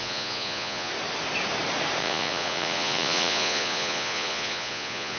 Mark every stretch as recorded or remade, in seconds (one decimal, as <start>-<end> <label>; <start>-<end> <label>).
0.0-0.9 remade; 0.9-2.0 recorded; 2.0-5.2 remade